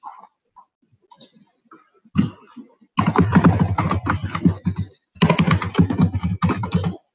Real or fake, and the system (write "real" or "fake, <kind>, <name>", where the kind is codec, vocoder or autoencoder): real